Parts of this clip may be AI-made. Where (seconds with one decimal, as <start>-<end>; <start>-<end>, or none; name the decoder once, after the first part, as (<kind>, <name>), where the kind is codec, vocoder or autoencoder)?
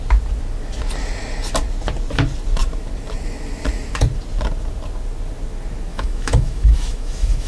5.9-7.5 (autoencoder, DAC-VAE)